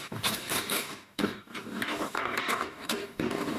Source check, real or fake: fake